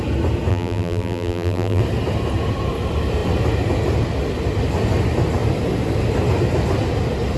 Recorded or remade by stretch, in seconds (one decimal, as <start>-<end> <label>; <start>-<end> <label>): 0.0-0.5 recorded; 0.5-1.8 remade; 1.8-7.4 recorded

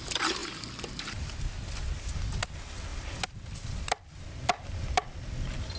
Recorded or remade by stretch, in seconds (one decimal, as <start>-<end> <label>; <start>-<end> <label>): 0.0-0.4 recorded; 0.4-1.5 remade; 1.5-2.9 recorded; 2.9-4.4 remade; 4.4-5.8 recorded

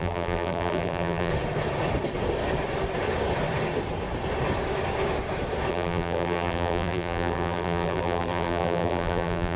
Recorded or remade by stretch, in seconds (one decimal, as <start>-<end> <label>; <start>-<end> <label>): 0.0-1.3 remade; 1.3-5.7 recorded; 5.7-9.6 remade

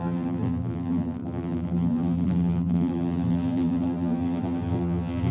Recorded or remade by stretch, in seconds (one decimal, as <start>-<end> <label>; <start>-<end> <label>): 0.0-5.3 remade